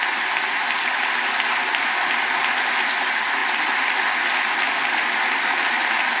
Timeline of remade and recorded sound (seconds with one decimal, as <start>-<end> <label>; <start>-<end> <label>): 0.0-6.2 recorded